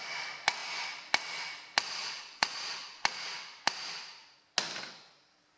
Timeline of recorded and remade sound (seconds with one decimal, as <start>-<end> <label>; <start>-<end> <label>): 0.0-2.0 recorded; 2.0-3.0 remade; 3.0-5.6 recorded